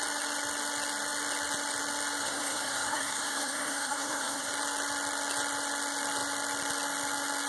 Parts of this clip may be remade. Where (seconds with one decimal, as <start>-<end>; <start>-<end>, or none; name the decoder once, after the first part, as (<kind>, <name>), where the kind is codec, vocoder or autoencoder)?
2.2-4.5 (codec, SNAC)